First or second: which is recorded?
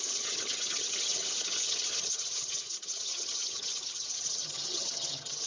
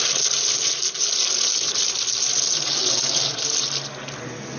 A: second